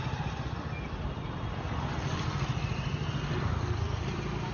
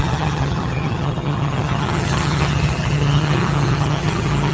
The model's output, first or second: second